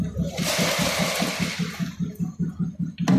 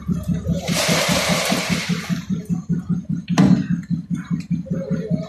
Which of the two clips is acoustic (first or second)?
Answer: first